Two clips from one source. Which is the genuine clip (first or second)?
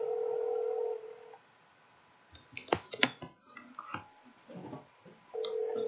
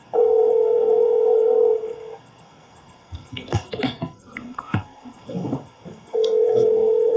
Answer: first